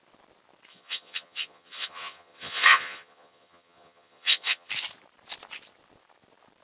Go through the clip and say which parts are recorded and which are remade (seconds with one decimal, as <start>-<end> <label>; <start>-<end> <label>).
0.0-0.7 recorded; 0.7-4.7 remade; 4.7-6.6 recorded